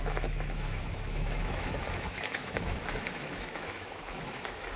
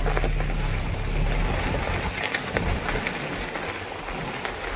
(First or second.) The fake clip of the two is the first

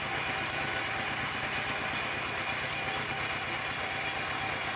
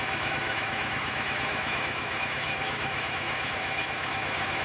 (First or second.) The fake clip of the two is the second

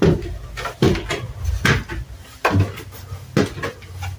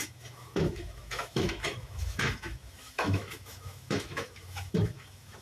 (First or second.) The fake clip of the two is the second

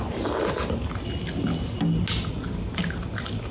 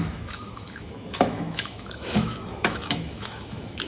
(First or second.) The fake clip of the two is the second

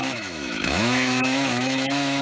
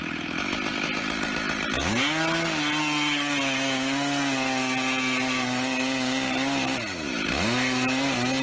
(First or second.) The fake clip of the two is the first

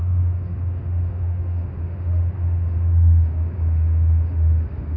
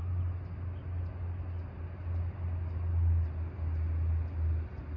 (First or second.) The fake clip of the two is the first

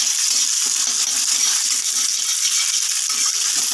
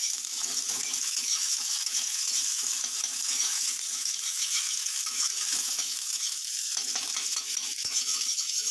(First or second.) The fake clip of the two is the second